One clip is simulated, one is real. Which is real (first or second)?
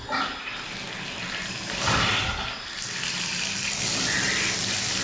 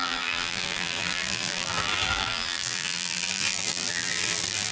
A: first